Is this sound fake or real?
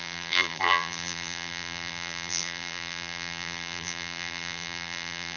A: fake